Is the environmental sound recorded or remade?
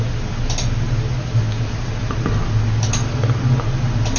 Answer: recorded